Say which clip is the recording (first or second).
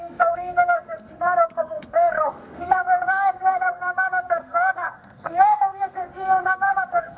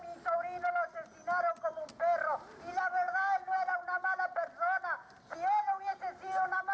second